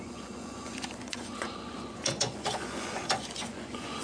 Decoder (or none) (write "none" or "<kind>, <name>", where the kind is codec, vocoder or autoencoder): vocoder, Vocos